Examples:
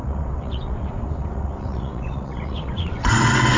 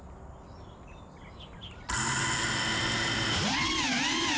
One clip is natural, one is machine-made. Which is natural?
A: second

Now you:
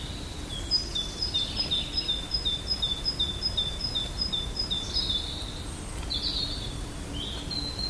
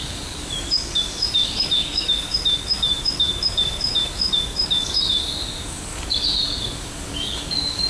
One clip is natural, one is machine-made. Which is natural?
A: first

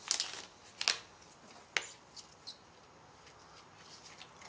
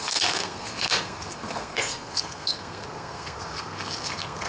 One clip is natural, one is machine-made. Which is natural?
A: first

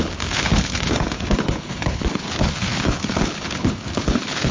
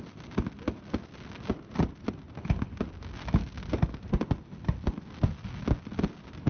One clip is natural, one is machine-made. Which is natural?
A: second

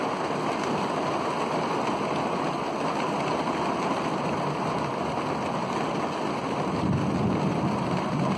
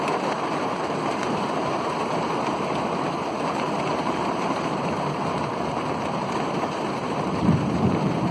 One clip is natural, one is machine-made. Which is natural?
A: first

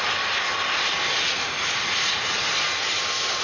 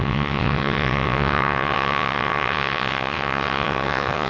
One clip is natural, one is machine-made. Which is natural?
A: first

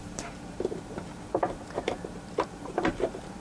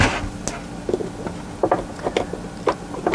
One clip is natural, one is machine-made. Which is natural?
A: second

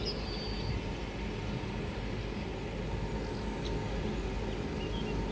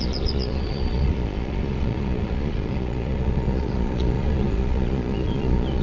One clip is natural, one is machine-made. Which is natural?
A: first